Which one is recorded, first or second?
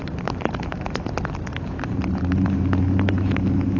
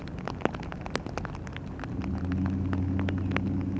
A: second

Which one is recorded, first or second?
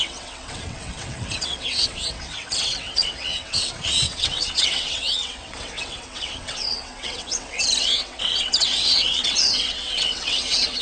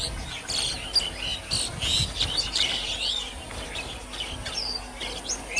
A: second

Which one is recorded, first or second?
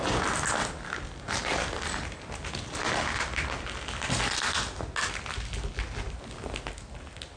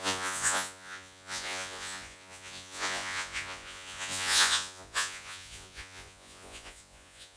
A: first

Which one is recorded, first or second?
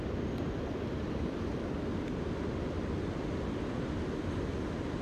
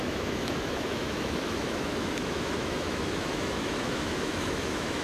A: first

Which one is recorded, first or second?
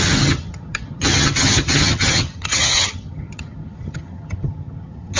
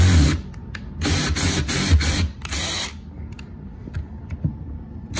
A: second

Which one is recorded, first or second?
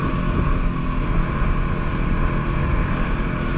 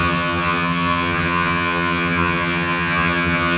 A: first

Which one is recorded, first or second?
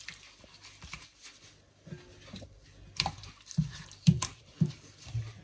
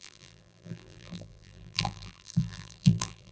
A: first